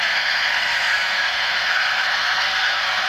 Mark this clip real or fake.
fake